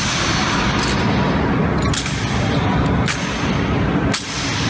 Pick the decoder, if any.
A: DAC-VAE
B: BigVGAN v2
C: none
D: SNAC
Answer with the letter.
C